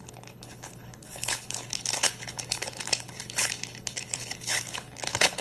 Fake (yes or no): yes